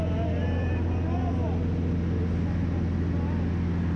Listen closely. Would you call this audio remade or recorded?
recorded